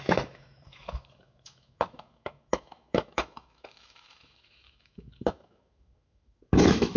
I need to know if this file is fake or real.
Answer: fake